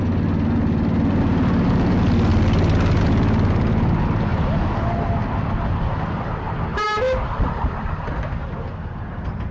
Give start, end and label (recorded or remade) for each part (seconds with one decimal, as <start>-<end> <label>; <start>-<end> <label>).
0.0-9.5 recorded